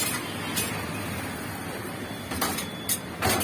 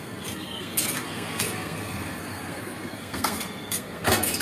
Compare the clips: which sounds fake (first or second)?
second